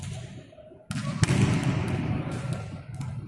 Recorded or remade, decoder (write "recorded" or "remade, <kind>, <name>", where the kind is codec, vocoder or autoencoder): recorded